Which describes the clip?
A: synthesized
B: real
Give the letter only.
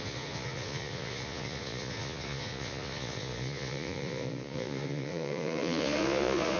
A